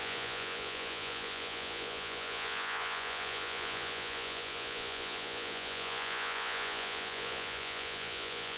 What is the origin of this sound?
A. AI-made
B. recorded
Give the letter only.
A